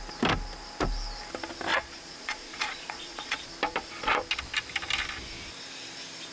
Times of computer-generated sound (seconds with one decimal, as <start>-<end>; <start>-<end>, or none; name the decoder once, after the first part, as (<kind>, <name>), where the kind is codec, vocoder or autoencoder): 1.7-3.5 (vocoder, Vocos)